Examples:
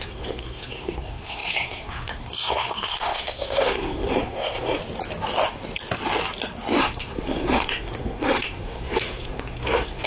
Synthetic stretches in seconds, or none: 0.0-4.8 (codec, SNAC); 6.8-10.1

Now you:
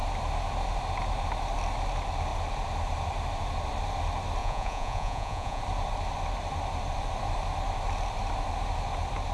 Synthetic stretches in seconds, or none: 4.4-5.6 (vocoder, Vocos)

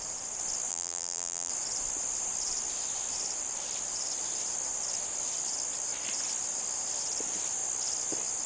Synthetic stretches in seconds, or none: 0.7-1.5 (vocoder, BigVGAN v2)

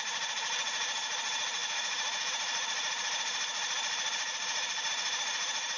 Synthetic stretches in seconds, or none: 1.6-2.3 (autoencoder, DAC-VAE)

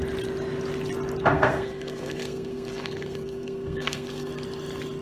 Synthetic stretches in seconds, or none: 1.3-4.3 (codec, SNAC)

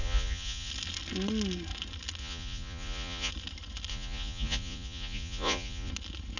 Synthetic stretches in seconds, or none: 0.0-0.7 (vocoder, Vocos); 2.2-3.3; 3.9-5.9

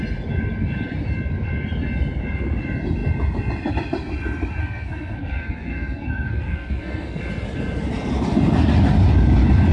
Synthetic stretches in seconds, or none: 4.6-7.2 (codec, SNAC)